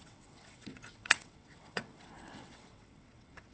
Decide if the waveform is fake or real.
fake